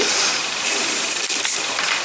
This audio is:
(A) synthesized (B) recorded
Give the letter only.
A